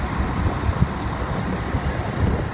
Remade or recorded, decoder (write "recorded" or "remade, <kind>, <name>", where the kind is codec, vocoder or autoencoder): recorded